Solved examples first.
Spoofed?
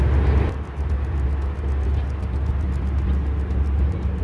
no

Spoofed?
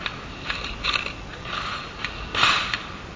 no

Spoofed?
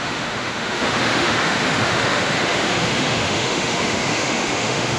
yes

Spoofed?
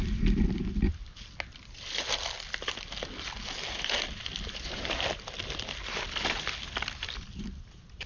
no